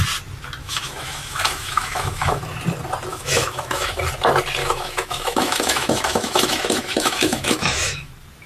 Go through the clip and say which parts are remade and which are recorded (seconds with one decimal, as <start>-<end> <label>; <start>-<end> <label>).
0.0-0.6 recorded; 0.6-2.4 remade; 2.4-3.1 recorded; 3.1-4.0 remade; 4.0-4.6 recorded; 4.6-8.1 remade; 8.1-8.5 recorded